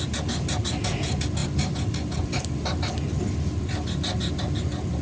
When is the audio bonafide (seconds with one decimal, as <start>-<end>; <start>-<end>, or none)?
0.0-5.0